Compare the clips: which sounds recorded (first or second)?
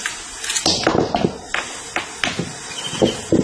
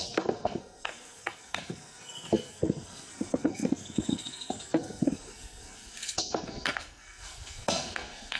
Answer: first